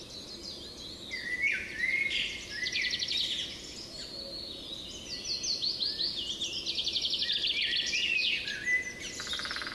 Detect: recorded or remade recorded